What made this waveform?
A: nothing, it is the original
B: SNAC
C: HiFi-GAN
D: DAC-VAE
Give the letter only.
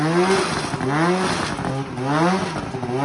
A